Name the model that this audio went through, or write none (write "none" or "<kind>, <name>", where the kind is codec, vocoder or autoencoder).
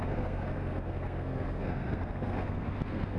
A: codec, SNAC